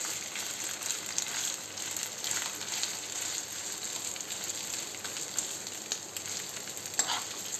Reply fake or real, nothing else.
real